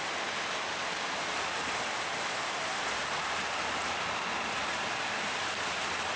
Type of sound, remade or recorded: recorded